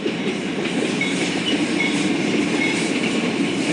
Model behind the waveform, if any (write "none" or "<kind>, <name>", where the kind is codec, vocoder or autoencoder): vocoder, BigVGAN v2